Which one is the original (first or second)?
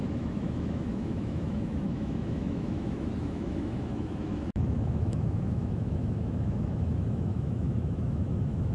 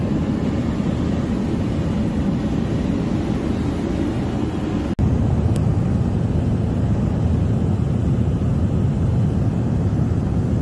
second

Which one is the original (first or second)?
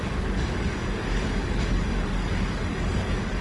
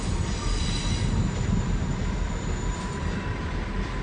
second